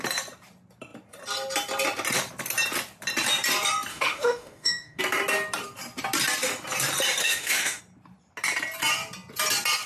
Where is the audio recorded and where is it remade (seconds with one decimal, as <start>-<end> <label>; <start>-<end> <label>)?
0.0-3.9 recorded; 3.9-5.0 remade; 5.0-7.2 recorded; 7.2-7.8 remade; 7.8-9.9 recorded